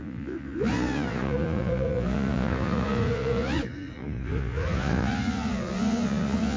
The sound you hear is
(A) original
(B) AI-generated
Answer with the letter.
B